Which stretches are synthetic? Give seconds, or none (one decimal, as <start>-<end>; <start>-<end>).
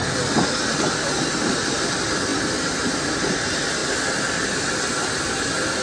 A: none